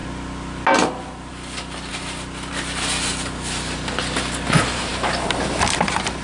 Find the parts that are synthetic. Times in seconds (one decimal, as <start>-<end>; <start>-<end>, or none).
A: none